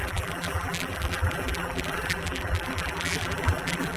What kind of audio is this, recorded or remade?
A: remade